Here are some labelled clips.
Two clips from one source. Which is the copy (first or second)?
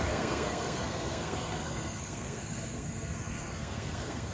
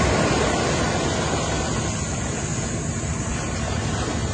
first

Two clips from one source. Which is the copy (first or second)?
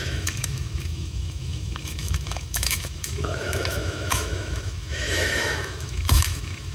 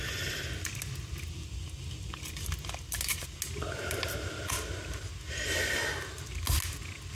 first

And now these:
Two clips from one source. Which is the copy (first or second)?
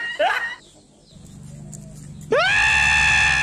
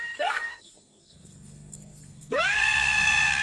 second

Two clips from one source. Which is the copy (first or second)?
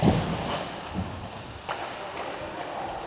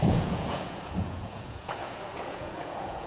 second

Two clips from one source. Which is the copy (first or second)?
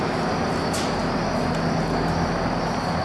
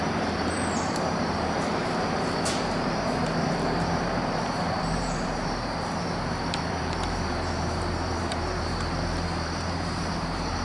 second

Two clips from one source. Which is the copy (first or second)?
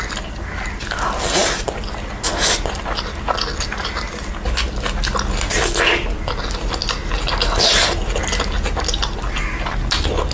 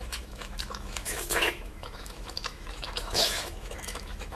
second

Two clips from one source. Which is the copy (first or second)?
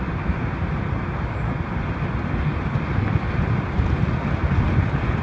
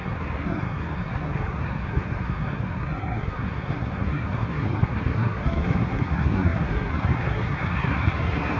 second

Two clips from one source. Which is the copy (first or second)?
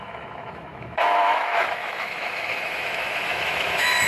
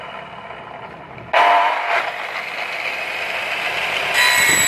first